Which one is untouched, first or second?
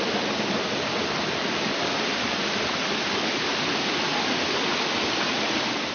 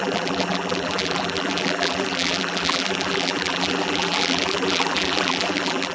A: first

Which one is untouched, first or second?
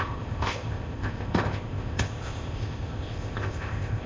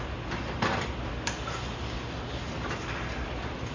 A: second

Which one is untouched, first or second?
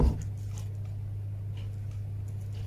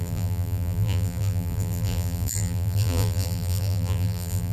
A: first